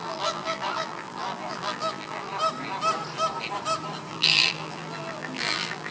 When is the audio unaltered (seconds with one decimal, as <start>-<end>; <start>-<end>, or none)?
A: 2.3-4.1